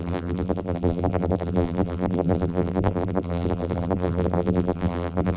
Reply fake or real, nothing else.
fake